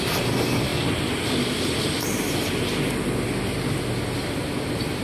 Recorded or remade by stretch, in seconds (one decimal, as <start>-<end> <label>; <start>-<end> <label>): 0.0-5.0 recorded